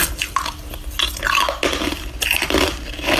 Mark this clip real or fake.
real